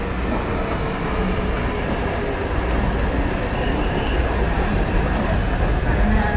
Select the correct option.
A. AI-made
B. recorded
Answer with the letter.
B